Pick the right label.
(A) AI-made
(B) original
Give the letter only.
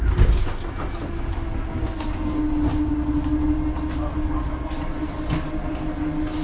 B